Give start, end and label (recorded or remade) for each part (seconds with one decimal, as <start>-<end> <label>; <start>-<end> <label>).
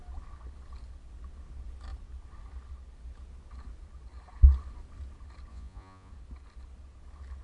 0.0-5.5 recorded; 5.5-6.1 remade; 6.1-7.4 recorded